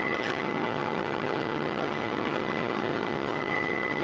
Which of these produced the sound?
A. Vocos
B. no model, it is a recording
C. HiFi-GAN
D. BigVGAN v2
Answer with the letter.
C